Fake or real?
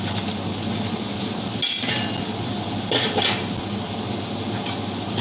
real